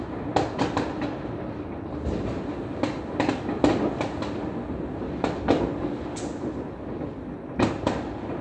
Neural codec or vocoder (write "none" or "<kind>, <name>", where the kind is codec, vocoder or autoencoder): none